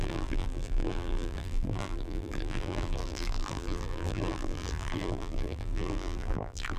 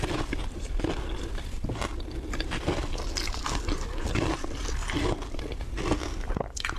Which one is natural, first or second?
second